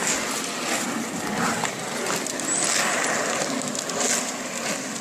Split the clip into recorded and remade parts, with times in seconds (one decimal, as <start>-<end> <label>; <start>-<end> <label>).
0.0-5.0 recorded